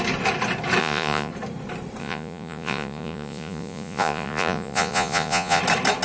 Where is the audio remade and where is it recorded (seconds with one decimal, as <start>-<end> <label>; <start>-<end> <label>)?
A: 0.0-0.8 recorded; 0.8-1.3 remade; 1.3-2.0 recorded; 2.0-5.6 remade; 5.6-6.0 recorded

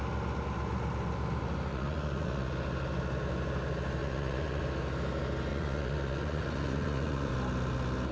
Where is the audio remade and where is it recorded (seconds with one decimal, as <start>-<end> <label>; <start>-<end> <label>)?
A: 0.0-1.7 recorded; 1.7-2.5 remade; 2.5-4.0 recorded; 4.0-4.6 remade; 4.6-5.5 recorded; 5.5-7.3 remade; 7.3-8.1 recorded

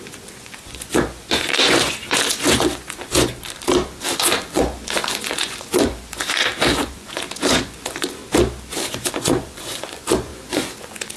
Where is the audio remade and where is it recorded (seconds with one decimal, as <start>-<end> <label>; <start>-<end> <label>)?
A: 0.0-3.3 remade; 3.3-4.2 recorded; 4.2-8.2 remade; 8.2-8.7 recorded; 8.7-11.2 remade